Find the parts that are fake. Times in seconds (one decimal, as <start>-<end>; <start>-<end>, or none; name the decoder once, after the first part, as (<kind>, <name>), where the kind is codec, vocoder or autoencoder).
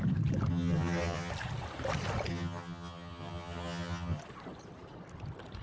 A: 0.5-1.3 (vocoder, HiFi-GAN); 2.3-4.2